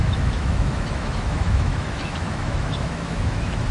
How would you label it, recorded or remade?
remade